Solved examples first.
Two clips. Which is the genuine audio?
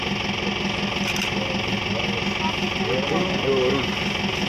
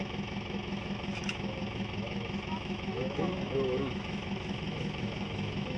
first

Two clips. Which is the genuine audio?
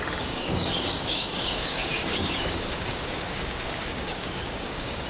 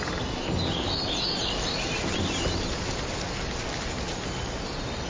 second